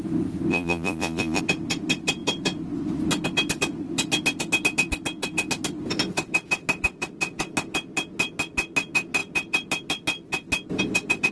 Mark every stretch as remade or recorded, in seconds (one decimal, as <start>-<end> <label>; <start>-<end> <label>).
0.0-0.5 recorded; 0.5-1.4 remade; 1.4-11.3 recorded